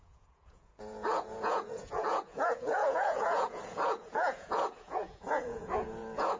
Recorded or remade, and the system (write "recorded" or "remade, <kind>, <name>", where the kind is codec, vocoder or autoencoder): remade, vocoder, Vocos